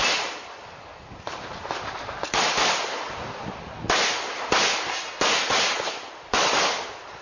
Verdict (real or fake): real